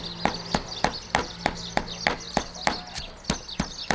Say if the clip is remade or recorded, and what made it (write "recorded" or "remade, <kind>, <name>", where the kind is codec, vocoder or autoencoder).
recorded